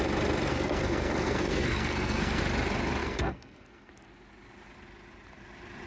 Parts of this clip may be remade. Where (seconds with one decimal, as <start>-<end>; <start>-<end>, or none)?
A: 0.5-2.4; 3.0-3.9